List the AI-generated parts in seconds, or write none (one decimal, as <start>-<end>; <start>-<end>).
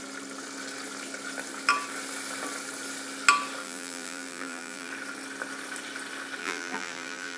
3.6-4.9; 6.4-7.4